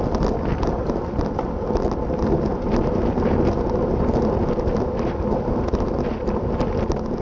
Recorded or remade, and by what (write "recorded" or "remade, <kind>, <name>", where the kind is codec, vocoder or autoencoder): recorded